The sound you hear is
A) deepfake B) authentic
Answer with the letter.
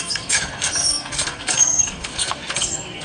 A